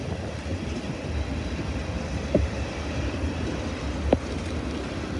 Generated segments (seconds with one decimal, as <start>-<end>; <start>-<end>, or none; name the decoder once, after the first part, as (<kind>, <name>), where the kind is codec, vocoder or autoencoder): none